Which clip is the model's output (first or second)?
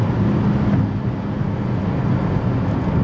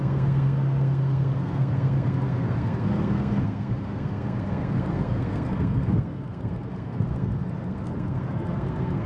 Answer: second